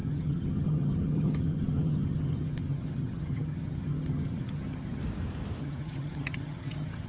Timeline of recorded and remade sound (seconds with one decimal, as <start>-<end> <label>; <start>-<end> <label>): 0.0-5.0 remade; 5.0-5.6 recorded; 5.6-7.1 remade

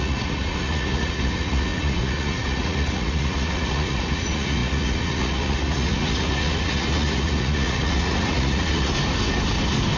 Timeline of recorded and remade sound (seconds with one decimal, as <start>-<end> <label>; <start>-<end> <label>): 0.0-8.9 remade; 8.9-10.0 recorded

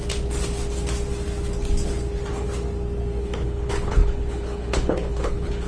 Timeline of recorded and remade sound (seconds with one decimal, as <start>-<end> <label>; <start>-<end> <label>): 0.0-3.2 recorded; 3.2-5.7 remade

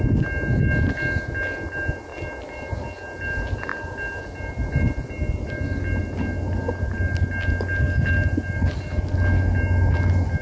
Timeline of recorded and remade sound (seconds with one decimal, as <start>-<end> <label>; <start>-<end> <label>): 0.0-10.4 recorded

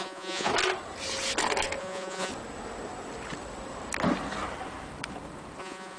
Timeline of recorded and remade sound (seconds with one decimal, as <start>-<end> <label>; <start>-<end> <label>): 0.0-0.5 remade; 0.5-1.8 recorded; 1.8-2.3 remade; 2.3-5.6 recorded; 5.6-6.0 remade

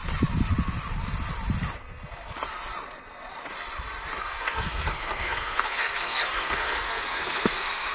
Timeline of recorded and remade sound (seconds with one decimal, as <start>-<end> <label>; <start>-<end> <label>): 0.0-4.2 recorded; 4.2-7.9 remade